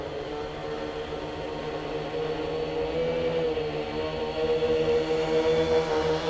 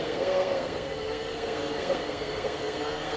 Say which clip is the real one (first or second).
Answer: first